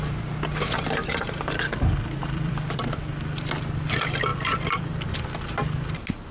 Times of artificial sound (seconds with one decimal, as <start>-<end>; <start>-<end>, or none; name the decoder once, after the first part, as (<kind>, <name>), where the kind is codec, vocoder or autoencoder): 2.2-3.0 (vocoder, BigVGAN v2); 4.3-4.9